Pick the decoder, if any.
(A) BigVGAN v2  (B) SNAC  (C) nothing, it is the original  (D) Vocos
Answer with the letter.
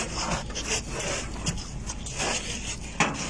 C